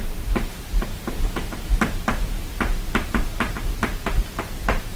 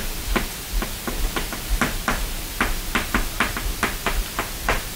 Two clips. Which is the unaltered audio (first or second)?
second